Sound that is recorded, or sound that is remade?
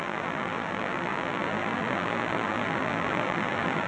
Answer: remade